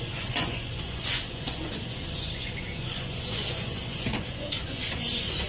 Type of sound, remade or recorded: remade